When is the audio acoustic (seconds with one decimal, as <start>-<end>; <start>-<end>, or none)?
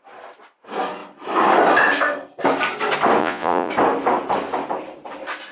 0.0-3.2; 3.7-5.5